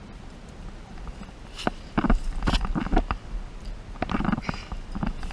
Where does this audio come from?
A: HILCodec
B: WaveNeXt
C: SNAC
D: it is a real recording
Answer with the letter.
D